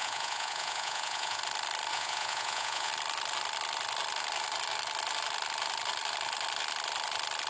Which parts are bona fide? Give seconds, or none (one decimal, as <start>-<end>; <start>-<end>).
1.4-1.9; 2.9-7.5